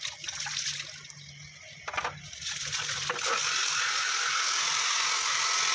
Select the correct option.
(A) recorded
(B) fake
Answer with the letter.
A